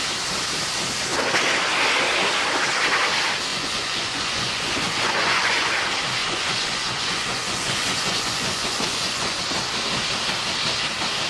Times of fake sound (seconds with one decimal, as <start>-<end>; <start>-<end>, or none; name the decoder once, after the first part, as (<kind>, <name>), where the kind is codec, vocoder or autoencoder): 3.5-5.7 (vocoder, Vocos); 6.2-9.4